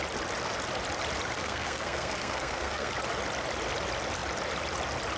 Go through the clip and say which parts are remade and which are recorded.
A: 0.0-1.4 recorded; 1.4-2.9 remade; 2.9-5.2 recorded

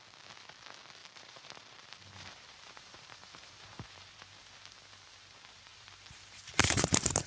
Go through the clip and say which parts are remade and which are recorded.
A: 0.0-1.0 recorded; 1.0-4.4 remade; 4.4-5.7 recorded; 5.7-7.3 remade

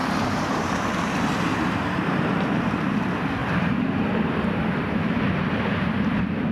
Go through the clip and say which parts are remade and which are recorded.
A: 0.0-0.6 remade; 0.6-1.5 recorded; 1.5-3.0 remade; 3.0-6.5 recorded

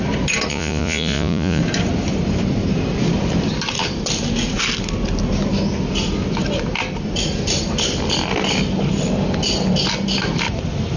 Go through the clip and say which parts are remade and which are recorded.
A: 0.0-0.5 recorded; 0.5-1.6 remade; 1.6-11.0 recorded

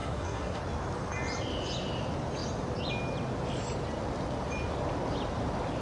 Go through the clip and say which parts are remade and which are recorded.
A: 0.0-0.6 remade; 0.6-5.8 recorded

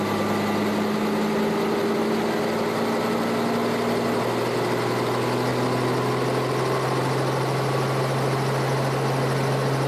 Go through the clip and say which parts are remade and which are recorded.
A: 0.0-9.9 recorded

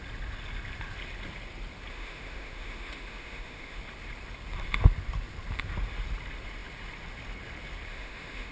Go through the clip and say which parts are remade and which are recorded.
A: 0.0-1.9 recorded; 1.9-3.8 remade; 3.8-7.9 recorded; 7.9-8.5 remade